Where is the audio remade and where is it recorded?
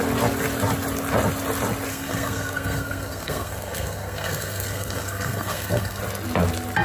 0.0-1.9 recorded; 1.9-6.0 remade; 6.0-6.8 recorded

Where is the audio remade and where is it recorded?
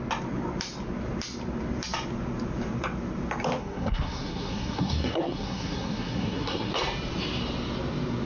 0.0-3.6 recorded; 3.6-6.7 remade; 6.7-8.3 recorded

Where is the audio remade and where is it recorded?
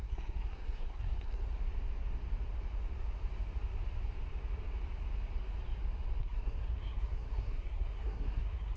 0.0-1.4 remade; 1.4-6.2 recorded; 6.2-8.8 remade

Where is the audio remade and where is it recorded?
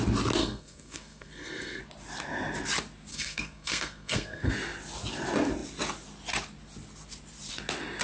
0.0-0.4 recorded; 0.4-1.8 remade; 1.8-3.1 recorded; 3.1-4.5 remade; 4.5-8.0 recorded